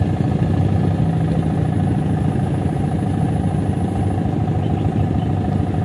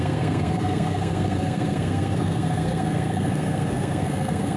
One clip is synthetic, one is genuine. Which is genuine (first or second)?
first